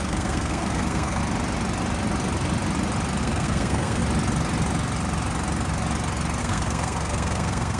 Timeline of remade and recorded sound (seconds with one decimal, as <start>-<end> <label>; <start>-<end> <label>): 0.0-1.2 remade; 1.2-3.2 recorded; 3.2-4.0 remade; 4.0-6.4 recorded; 6.4-7.8 remade